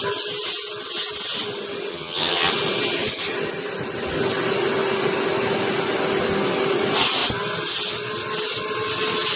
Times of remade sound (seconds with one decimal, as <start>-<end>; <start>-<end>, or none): 1.9-2.5